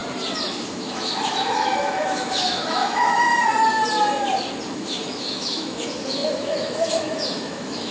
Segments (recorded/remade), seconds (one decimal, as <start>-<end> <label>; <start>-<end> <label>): 0.0-0.5 recorded; 0.5-3.3 remade; 3.3-4.7 recorded; 4.7-7.9 remade